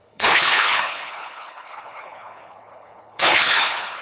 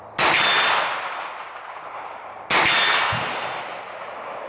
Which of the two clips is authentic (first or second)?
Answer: second